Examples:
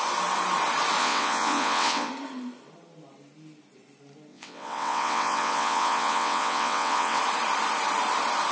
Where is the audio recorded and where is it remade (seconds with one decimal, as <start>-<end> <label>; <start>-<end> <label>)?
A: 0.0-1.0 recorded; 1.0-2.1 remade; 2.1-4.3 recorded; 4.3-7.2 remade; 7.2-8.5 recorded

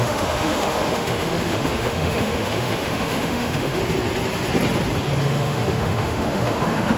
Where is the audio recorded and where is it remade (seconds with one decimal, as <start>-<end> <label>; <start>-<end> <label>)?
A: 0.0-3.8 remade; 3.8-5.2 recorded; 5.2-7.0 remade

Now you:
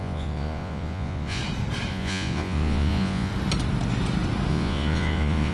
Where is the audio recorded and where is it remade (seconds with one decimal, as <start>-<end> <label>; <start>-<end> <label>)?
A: 0.0-1.4 remade; 1.4-1.9 recorded; 1.9-3.3 remade; 3.3-4.5 recorded; 4.5-5.5 remade